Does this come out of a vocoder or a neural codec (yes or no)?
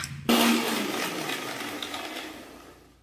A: no